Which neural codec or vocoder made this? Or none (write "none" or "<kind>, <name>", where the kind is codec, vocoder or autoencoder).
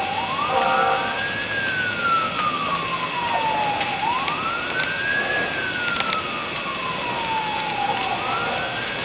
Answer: none